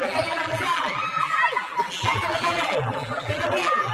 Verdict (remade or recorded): remade